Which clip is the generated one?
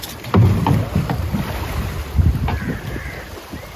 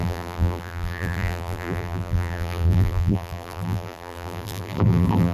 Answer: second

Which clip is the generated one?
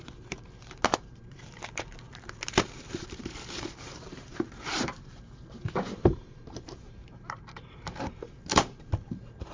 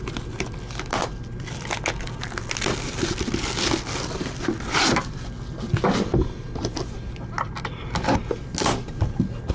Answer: first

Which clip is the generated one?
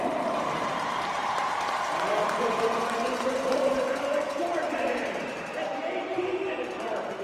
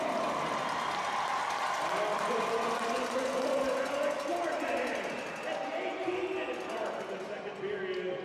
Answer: first